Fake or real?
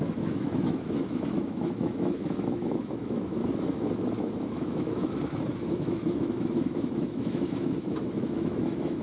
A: fake